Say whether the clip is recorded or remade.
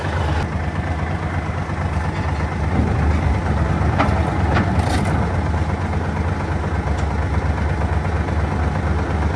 recorded